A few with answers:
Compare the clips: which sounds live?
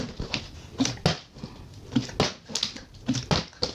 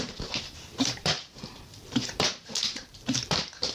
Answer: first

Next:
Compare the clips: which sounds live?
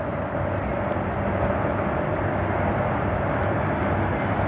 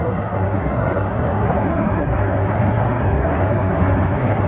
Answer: first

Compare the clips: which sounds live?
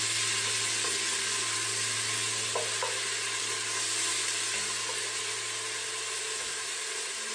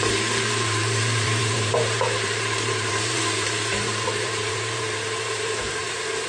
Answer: first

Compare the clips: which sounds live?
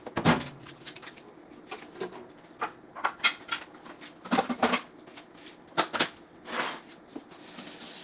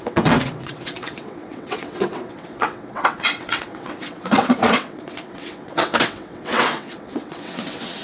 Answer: first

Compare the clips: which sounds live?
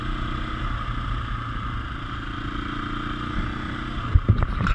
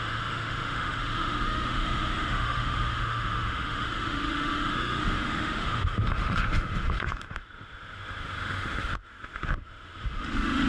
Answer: first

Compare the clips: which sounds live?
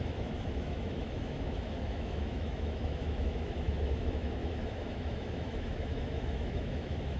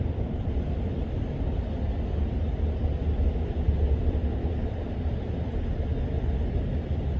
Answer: second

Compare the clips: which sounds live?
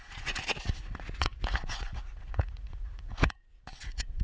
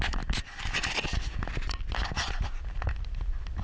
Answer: second